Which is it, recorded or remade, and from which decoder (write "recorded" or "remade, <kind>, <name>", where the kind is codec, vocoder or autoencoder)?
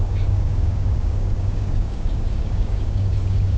remade, codec, DAC